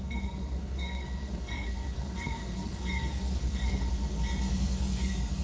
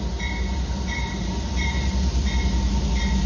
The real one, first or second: second